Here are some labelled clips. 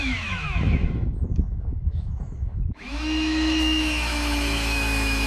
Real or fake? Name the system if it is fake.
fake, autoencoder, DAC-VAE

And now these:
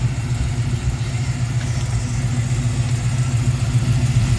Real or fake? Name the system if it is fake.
real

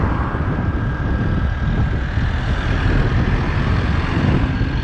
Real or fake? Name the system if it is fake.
real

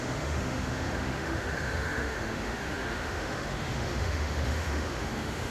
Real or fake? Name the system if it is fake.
fake, autoencoder, DAC-VAE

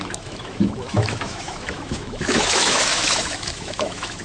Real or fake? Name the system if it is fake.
fake, autoencoder, DAC-VAE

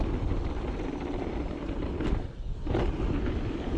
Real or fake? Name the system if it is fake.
real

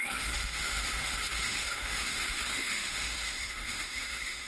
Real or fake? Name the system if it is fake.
fake, autoencoder, DAC-VAE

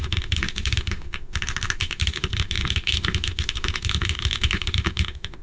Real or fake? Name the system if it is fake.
fake, autoencoder, DAC-VAE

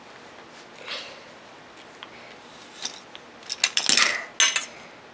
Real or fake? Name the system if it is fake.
real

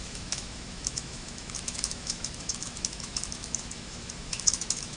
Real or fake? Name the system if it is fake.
fake, autoencoder, DAC-VAE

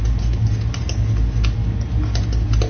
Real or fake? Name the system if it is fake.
real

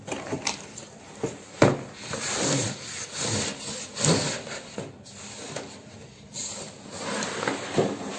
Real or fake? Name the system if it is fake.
real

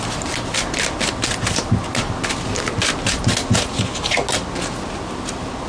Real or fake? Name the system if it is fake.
real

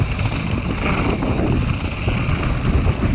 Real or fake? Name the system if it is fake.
real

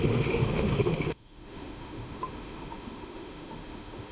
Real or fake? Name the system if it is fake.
fake, autoencoder, DAC-VAE